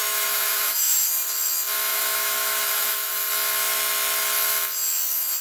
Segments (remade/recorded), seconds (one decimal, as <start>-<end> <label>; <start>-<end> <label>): 0.0-1.1 remade; 1.1-1.9 recorded; 1.9-3.1 remade; 3.1-5.4 recorded